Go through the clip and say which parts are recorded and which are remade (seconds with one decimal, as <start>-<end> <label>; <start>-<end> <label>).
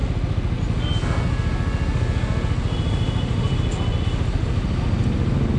0.0-5.6 recorded